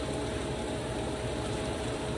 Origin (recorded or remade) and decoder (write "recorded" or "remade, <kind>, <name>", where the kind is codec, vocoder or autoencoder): remade, vocoder, BigVGAN v2